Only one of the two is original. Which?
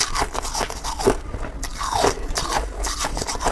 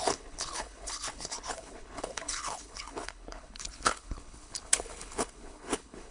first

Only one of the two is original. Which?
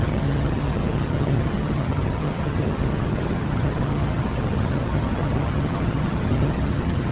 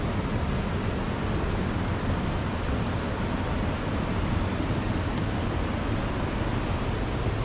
second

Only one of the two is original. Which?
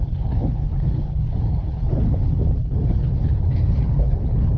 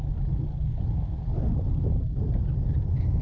second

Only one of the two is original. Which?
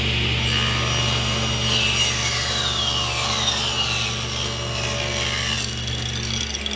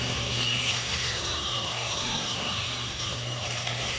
first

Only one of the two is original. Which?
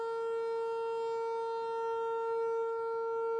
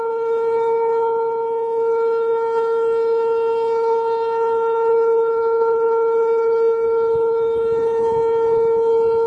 first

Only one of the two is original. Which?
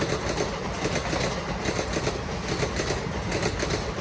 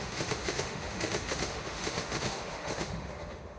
first